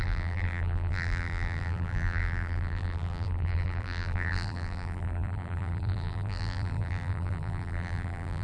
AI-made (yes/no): yes